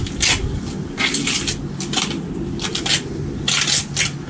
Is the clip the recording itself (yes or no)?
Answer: yes